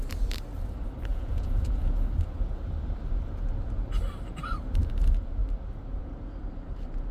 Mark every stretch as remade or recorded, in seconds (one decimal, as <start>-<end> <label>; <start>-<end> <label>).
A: 0.0-1.1 recorded; 1.1-2.1 remade; 2.1-7.1 recorded